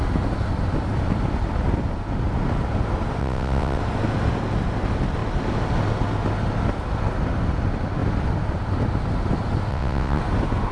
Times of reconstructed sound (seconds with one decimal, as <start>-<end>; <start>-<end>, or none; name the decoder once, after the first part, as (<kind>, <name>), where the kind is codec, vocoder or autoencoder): 3.2-3.8 (vocoder, WaveNeXt); 9.7-10.2